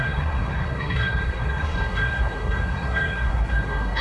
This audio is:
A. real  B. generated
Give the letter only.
B